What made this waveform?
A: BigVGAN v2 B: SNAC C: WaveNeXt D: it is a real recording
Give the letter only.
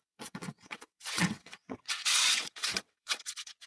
C